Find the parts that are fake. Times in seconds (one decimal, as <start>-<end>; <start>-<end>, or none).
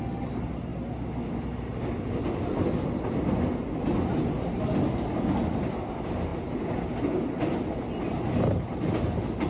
none